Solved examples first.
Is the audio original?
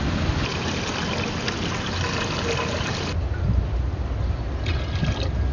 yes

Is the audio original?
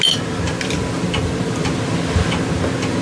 yes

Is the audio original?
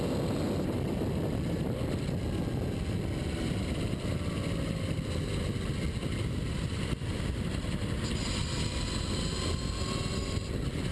yes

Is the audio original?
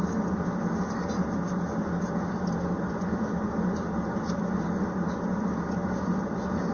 yes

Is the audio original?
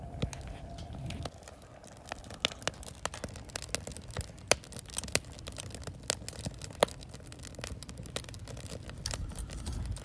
yes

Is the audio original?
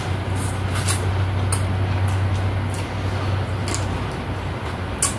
yes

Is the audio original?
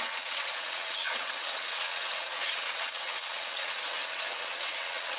no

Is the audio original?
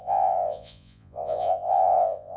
no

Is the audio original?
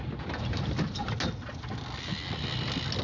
yes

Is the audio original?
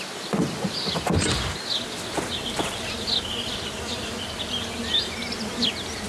yes